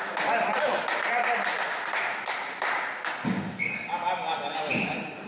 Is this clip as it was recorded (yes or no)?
yes